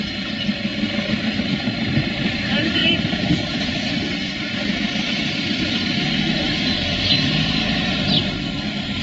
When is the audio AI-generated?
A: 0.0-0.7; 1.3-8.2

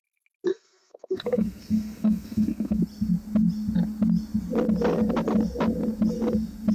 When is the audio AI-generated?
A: 0.5-2.8

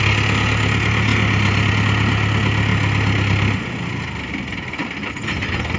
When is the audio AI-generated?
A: none

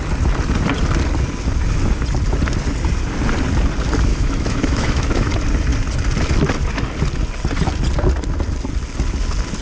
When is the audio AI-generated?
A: 4.1-5.3

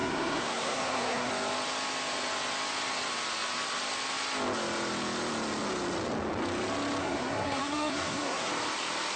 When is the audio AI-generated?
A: 0.0-1.3; 7.0-8.5

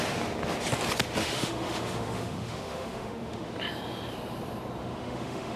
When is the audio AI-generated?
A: 1.2-3.5; 4.8-5.6